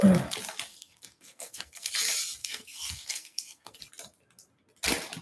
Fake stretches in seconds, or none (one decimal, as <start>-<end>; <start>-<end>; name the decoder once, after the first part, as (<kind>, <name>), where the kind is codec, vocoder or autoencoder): 0.7-1.9 (codec, SNAC); 2.4-3.8